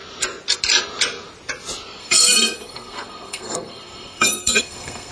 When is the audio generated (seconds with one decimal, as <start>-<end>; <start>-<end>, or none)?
2.0-5.1